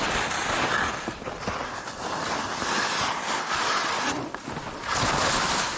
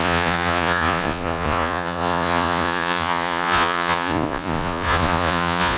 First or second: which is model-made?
second